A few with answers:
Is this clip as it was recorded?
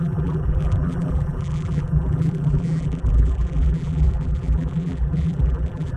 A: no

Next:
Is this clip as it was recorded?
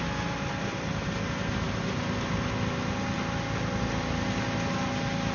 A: yes